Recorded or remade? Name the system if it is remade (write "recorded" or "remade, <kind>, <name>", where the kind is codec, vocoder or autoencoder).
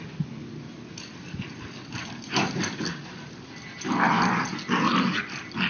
recorded